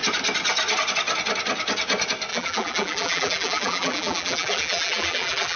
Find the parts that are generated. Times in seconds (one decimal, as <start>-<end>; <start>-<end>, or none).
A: 2.3-5.6